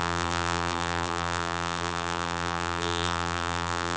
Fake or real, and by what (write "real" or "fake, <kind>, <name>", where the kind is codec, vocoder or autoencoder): fake, vocoder, BigVGAN v2